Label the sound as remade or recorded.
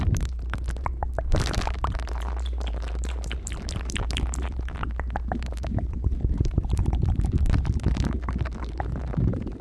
remade